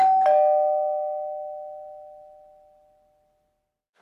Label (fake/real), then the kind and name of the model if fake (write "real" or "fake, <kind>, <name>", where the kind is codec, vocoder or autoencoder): real